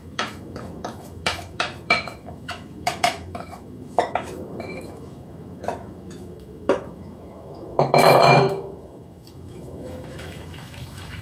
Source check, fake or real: fake